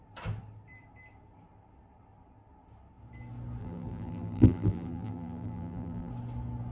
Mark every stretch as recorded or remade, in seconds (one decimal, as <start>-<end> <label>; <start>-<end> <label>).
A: 0.0-3.6 recorded; 3.6-6.1 remade; 6.1-6.7 recorded